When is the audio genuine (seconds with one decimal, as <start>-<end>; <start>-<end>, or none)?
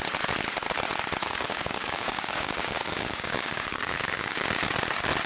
0.0-1.2; 4.4-5.3